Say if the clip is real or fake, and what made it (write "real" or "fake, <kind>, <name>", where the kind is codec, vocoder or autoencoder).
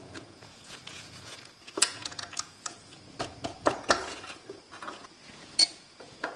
fake, vocoder, Vocos